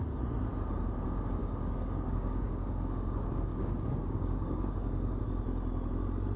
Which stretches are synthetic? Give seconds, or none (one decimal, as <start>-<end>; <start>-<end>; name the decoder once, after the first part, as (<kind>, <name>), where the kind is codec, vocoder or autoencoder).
1.4-5.2 (codec, DAC)